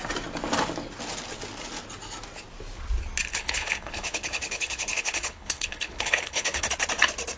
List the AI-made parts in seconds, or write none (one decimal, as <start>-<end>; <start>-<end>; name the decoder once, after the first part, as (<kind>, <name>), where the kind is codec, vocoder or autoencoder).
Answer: 3.3-6.7 (codec, HILCodec)